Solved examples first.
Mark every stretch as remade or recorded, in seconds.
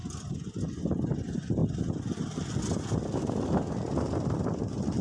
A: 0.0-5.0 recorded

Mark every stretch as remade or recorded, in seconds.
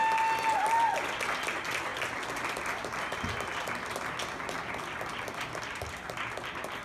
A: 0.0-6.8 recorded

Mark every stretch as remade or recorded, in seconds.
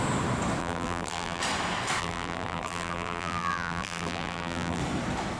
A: 0.0-0.6 recorded; 0.6-1.4 remade; 1.4-2.0 recorded; 2.0-4.8 remade; 4.8-5.4 recorded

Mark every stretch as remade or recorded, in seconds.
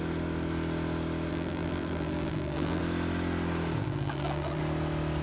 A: 0.0-1.3 recorded; 1.3-2.8 remade; 2.8-3.8 recorded; 3.8-4.6 remade; 4.6-5.2 recorded